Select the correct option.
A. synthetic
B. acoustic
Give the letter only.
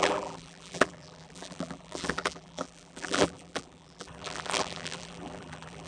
A